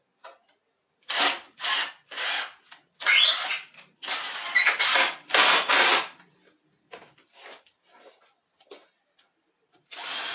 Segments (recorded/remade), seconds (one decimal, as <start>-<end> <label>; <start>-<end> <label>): 0.0-10.3 recorded